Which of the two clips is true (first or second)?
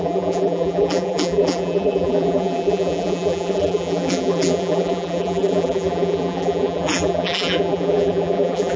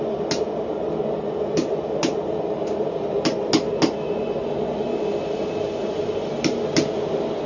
second